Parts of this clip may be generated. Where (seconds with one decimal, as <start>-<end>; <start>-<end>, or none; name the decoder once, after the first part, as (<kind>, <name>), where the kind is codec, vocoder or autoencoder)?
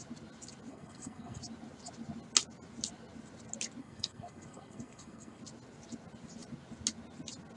0.7-1.4 (codec, SNAC); 3.8-5.4